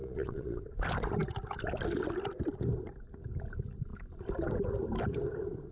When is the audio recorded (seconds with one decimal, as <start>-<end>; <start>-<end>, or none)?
0.6-5.7